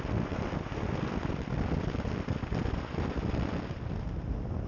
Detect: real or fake real